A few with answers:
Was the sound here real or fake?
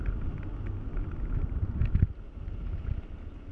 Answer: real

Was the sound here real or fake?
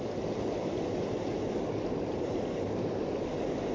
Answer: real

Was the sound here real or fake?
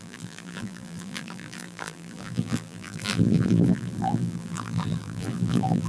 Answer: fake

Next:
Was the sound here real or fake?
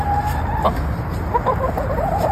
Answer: real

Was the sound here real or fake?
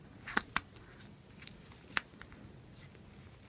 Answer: real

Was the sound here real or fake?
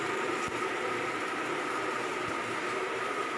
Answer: fake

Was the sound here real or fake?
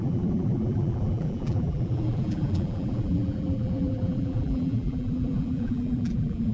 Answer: fake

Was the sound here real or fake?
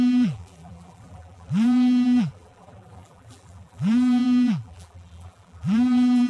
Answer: fake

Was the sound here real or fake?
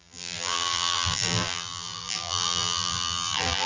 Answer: fake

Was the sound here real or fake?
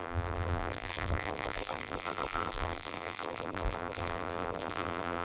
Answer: fake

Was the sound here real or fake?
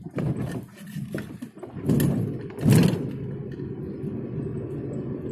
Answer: real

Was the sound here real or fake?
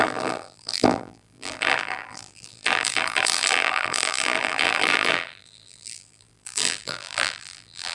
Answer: fake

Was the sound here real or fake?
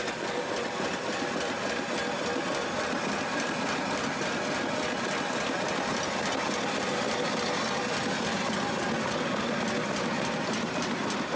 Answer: real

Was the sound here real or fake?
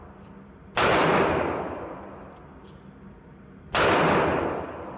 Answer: real